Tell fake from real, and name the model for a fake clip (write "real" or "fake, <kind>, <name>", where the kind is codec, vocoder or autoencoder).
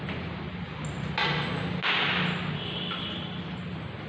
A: real